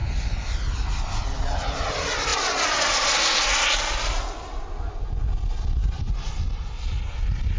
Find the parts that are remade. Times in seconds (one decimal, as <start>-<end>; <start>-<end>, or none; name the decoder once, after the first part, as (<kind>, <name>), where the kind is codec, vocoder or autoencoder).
none